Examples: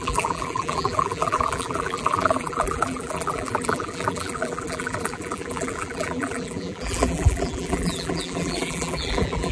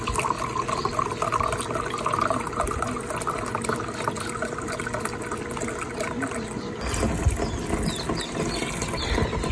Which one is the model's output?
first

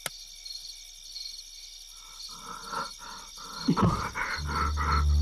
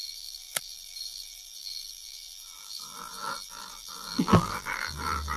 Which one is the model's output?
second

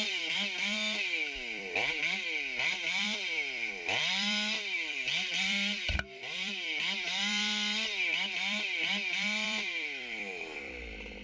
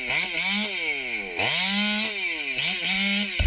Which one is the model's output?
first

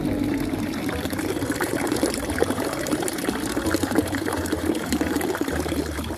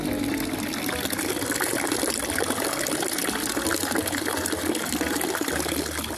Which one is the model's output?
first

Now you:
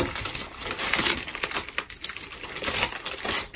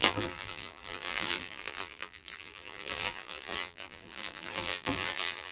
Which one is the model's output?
second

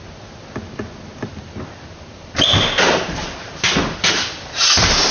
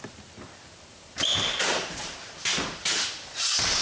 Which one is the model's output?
second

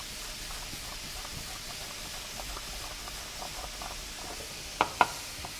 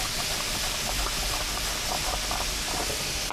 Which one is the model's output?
first